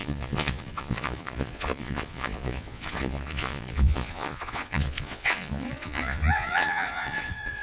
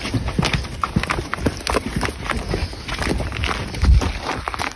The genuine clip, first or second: second